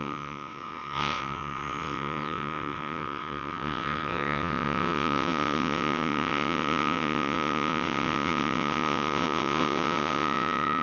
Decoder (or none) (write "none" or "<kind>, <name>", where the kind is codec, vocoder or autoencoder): vocoder, WaveNeXt